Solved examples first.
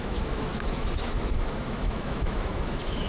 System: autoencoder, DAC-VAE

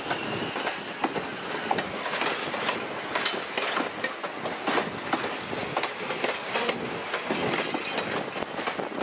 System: none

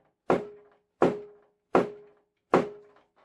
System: none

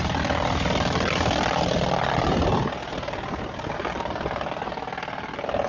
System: none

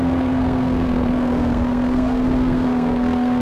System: codec, SNAC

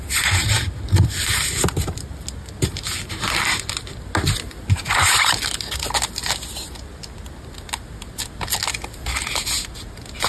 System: none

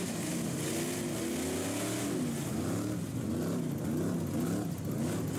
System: none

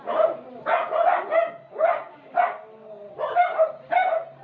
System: none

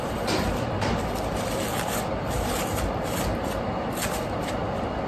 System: none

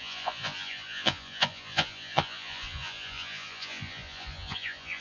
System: vocoder, Vocos